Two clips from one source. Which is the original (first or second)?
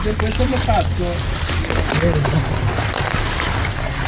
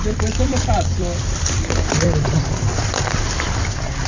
first